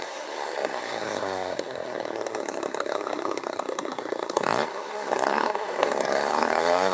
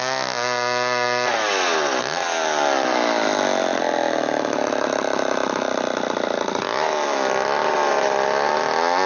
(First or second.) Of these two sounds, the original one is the second